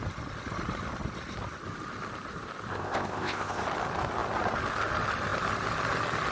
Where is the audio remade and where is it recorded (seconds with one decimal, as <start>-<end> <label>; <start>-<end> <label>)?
0.0-2.7 recorded; 2.7-3.6 remade; 3.6-6.3 recorded